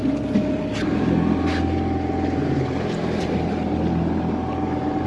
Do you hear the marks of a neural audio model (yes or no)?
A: no